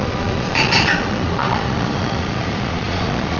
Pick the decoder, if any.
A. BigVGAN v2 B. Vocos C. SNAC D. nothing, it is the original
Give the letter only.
B